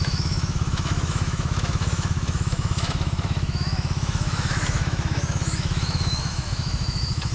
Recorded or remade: remade